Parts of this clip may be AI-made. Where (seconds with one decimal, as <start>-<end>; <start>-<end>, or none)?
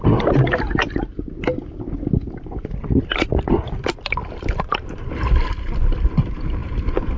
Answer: 4.2-5.1